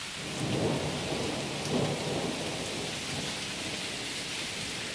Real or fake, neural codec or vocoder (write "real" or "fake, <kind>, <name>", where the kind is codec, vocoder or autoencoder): real